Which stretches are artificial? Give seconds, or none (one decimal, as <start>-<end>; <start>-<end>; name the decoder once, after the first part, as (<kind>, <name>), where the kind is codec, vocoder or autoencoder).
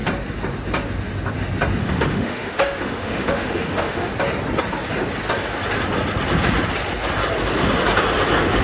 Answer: 1.8-4.1 (autoencoder, DAC-VAE)